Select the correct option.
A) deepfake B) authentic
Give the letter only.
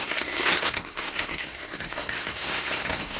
A